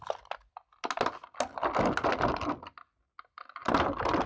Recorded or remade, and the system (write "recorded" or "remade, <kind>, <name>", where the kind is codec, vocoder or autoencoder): recorded